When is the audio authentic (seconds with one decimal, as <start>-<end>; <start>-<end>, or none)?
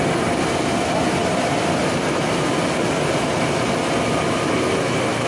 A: 0.0-5.3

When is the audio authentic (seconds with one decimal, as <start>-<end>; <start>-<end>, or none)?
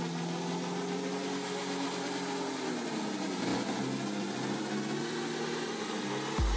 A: 0.0-6.6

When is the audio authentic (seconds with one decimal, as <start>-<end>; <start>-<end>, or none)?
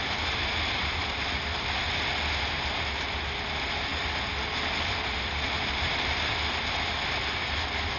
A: 0.0-8.0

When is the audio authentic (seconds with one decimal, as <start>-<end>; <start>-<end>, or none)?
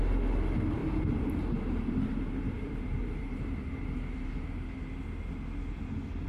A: 0.0-0.8; 4.6-6.3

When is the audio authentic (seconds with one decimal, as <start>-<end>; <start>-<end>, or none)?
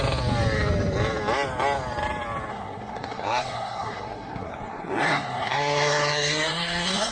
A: 0.0-2.5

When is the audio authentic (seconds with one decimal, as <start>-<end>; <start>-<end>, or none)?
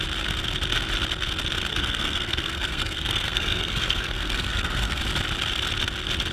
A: 0.0-1.7; 5.0-6.3